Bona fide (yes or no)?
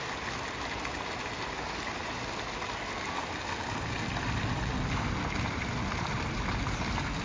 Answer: yes